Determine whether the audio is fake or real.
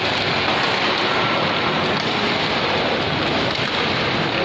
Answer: real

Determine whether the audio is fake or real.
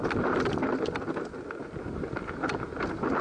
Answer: real